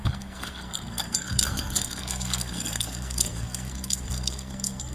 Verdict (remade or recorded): remade